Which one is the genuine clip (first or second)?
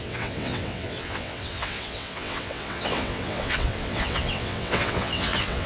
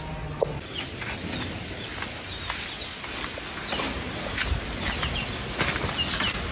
second